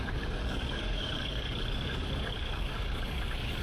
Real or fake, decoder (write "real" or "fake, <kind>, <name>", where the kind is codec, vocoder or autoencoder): fake, codec, DAC